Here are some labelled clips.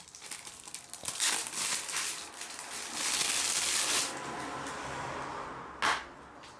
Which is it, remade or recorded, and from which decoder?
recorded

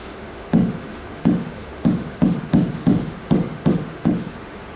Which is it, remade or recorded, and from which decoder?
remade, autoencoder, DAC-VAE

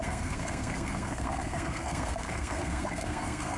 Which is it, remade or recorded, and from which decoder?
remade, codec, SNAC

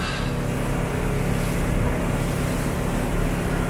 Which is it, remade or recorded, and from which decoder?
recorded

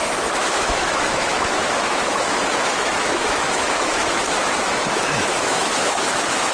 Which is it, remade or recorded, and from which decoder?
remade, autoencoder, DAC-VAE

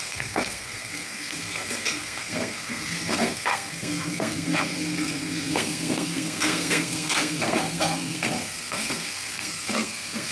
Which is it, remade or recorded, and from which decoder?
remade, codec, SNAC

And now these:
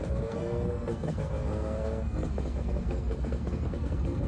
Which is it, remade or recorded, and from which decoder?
remade, codec, SNAC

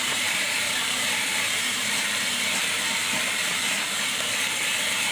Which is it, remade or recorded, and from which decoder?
remade, vocoder, BigVGAN v2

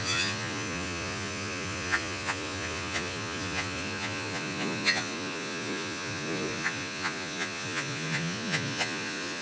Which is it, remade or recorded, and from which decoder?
remade, vocoder, Vocos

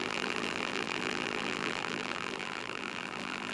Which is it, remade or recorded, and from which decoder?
remade, vocoder, BigVGAN v2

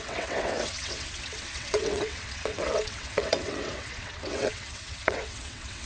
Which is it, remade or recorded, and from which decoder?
remade, vocoder, WaveNeXt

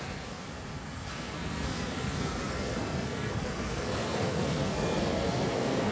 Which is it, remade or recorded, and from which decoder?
remade, codec, SNAC